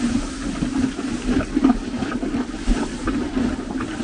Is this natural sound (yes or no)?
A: yes